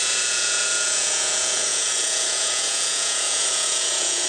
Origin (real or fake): fake